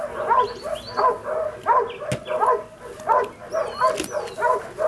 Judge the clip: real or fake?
real